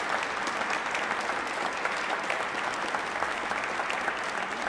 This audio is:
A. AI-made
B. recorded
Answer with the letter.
B